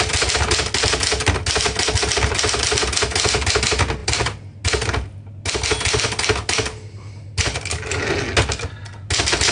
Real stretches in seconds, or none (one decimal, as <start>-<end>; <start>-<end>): 0.0-9.5